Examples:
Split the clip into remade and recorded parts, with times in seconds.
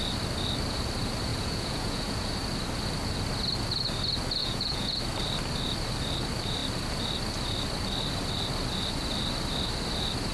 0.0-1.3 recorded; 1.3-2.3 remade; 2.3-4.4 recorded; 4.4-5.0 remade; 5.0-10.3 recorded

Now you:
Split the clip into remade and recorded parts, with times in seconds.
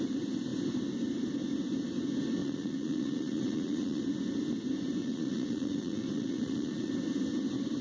0.0-2.4 recorded; 2.4-4.0 remade; 4.0-5.0 recorded; 5.0-6.9 remade; 6.9-7.8 recorded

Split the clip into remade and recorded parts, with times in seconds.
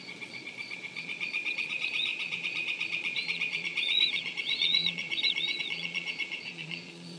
0.0-7.2 remade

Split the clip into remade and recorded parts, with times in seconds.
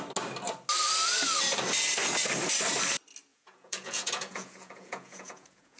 0.0-3.3 recorded; 3.3-5.8 remade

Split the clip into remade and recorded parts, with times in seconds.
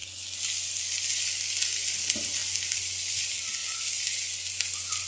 0.0-5.1 recorded